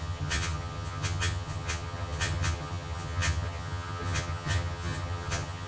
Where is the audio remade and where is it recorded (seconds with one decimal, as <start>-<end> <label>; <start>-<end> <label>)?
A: 0.0-5.7 remade